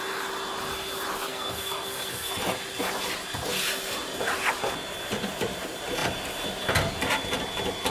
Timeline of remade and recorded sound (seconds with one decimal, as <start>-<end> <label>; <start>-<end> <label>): 0.0-1.3 recorded; 1.3-2.3 remade; 2.3-7.9 recorded